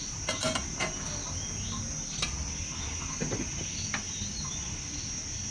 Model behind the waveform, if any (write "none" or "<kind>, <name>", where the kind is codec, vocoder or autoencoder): none